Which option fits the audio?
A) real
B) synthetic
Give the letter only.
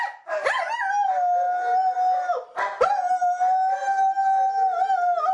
A